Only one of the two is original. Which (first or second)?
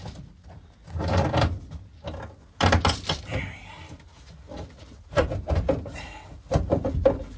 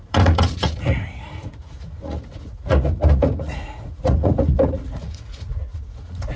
first